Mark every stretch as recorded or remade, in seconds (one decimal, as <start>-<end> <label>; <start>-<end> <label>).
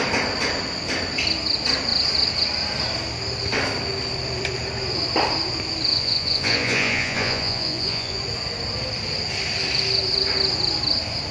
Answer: 0.0-5.9 recorded; 5.9-8.2 remade; 8.2-11.3 recorded